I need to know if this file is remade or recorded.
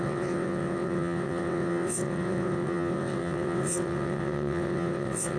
remade